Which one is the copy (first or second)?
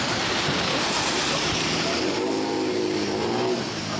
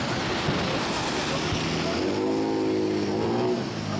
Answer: first